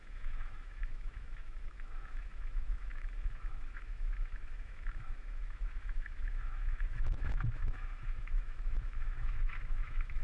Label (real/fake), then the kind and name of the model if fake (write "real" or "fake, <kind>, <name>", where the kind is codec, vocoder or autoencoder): fake, autoencoder, DAC-VAE